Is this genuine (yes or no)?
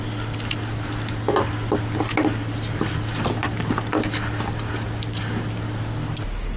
yes